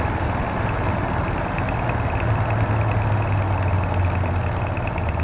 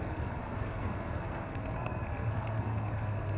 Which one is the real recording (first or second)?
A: first